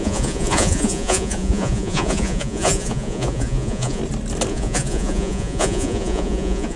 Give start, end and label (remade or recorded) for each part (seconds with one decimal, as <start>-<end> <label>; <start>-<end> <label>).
0.0-4.0 remade; 4.0-4.5 recorded; 4.5-6.8 remade